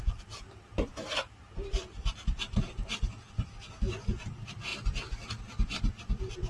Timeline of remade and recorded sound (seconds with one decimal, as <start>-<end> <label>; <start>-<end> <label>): 0.0-0.9 recorded; 0.9-2.8 remade; 2.8-6.5 recorded